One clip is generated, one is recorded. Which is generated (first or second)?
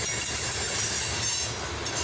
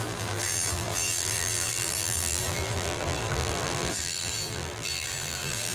second